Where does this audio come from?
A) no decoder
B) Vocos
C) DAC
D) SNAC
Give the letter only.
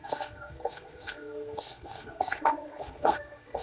D